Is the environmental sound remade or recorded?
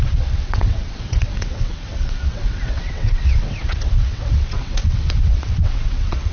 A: remade